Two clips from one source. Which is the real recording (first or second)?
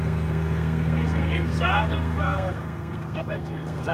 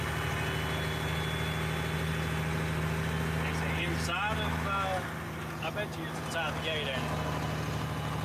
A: second